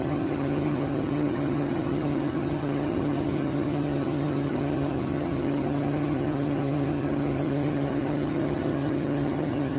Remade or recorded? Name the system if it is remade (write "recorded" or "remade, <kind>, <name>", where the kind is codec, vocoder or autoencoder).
remade, vocoder, HiFi-GAN